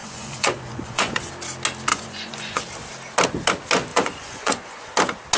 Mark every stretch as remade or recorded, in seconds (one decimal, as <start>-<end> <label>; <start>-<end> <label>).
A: 0.0-1.3 remade; 1.3-1.9 recorded; 1.9-2.6 remade; 2.6-3.9 recorded; 3.9-4.9 remade; 4.9-5.4 recorded